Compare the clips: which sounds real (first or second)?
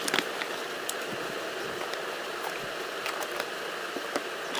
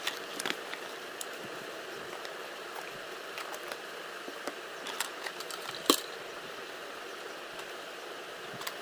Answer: first